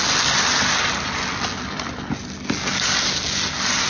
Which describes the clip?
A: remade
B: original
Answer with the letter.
B